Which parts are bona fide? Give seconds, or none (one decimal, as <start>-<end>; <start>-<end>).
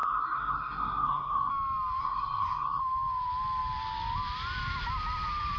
1.5-2.0; 2.8-5.6